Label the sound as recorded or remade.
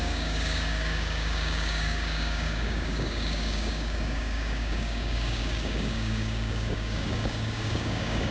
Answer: remade